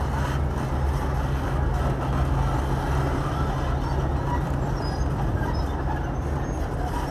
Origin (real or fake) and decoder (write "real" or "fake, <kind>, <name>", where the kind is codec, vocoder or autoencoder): real